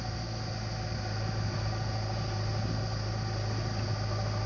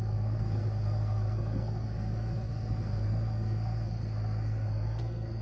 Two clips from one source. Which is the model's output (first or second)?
second